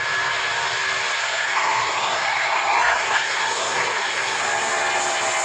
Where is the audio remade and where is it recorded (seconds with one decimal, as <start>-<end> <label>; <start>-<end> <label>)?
0.0-1.2 recorded; 1.2-4.4 remade; 4.4-5.4 recorded